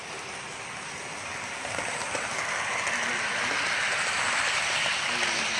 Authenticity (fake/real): real